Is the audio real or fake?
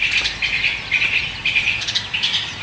real